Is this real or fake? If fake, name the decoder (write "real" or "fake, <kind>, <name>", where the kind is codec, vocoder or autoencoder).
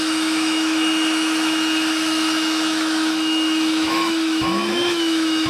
fake, autoencoder, DAC-VAE